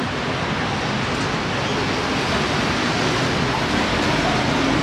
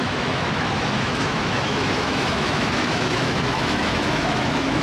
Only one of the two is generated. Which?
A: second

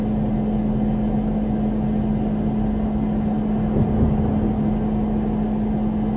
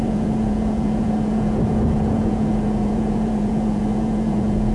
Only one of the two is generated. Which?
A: second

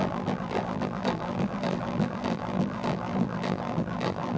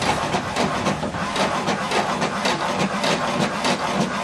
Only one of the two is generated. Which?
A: first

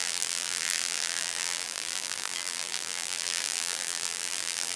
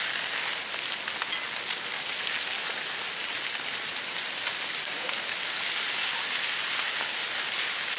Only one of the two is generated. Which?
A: first